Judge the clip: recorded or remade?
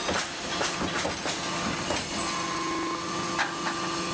recorded